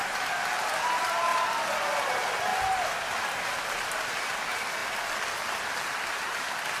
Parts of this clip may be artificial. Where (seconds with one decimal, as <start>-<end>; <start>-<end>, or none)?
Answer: 0.0-1.3; 2.1-2.5; 3.5-4.8; 5.5-6.8